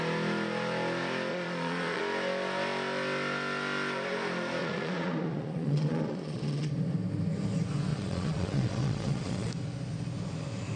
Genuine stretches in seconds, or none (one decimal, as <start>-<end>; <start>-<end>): 0.0-1.3; 2.0-4.6; 6.7-7.9; 9.5-10.8